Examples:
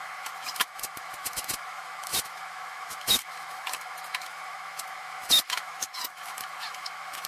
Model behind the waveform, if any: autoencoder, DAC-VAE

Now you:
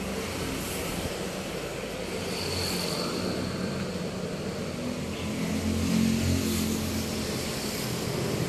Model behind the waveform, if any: none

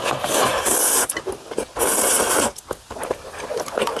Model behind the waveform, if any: none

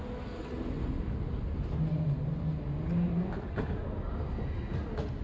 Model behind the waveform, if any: none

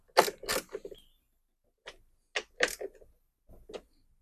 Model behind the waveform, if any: none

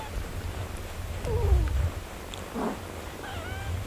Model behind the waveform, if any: none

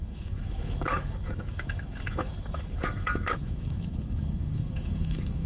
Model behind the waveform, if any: autoencoder, DAC-VAE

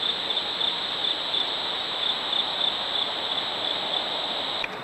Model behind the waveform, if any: none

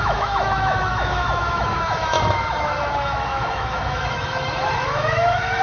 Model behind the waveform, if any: autoencoder, DAC-VAE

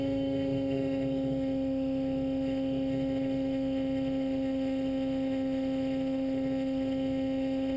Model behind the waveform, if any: autoencoder, DAC-VAE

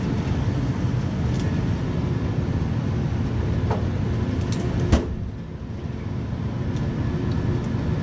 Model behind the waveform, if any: none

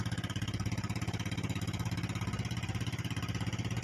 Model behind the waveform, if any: none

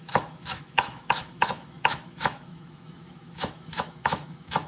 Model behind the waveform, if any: autoencoder, DAC-VAE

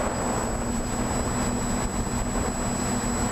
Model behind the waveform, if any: none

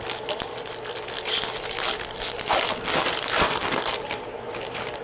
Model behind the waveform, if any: none